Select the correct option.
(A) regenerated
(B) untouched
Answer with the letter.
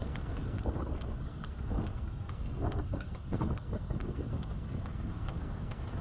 A